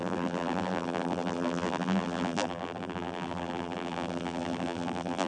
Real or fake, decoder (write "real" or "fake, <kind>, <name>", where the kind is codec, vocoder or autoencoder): fake, vocoder, BigVGAN v2